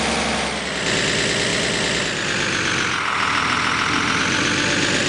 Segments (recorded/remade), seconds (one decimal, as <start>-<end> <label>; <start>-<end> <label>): 0.0-5.1 recorded

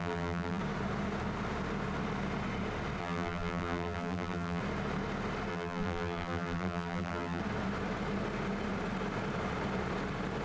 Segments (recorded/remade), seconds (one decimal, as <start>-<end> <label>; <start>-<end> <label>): 0.0-0.6 remade; 0.6-3.0 recorded; 3.0-4.6 remade; 4.6-5.5 recorded; 5.5-7.4 remade; 7.4-10.4 recorded

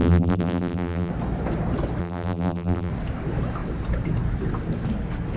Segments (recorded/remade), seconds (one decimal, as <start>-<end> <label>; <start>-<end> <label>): 0.0-1.1 remade; 1.1-2.0 recorded; 2.0-2.9 remade; 2.9-5.4 recorded